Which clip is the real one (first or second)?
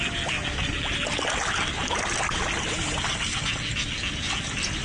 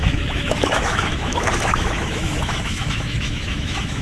first